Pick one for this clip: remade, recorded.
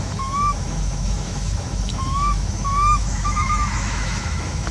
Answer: remade